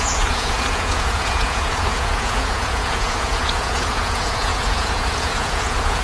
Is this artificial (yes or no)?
yes